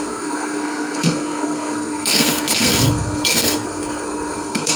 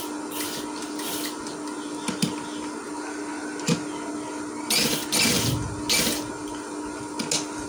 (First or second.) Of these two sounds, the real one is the second